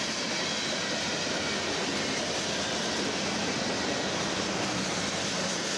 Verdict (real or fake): real